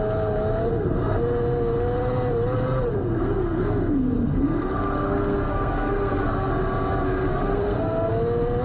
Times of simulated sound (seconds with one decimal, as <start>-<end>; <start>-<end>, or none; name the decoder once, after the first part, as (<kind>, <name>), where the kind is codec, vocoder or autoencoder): 0.7-1.2 (codec, SNAC); 2.9-6.5; 7.3-8.1